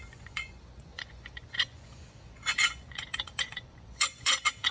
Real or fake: fake